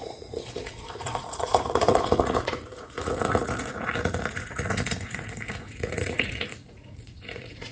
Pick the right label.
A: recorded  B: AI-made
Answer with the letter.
B